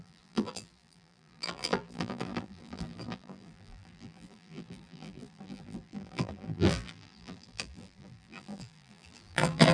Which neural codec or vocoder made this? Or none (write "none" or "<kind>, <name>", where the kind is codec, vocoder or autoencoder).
vocoder, BigVGAN v2